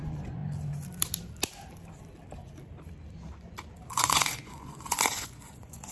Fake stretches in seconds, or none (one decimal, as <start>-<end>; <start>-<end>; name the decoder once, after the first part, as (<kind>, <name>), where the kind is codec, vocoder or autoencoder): 0.0-0.4 (vocoder, Vocos); 3.9-5.9